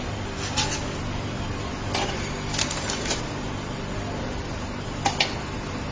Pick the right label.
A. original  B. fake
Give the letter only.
A